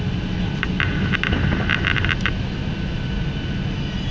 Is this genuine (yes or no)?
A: yes